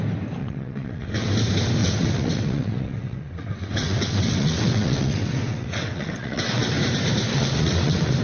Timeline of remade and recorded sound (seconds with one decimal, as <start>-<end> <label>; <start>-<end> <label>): 0.0-0.4 recorded; 0.4-1.3 remade; 1.3-1.8 recorded; 1.8-6.7 remade; 6.7-7.3 recorded; 7.3-8.2 remade